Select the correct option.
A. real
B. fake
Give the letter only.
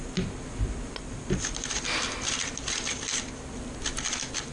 A